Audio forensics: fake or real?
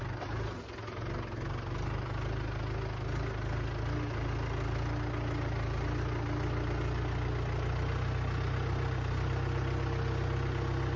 real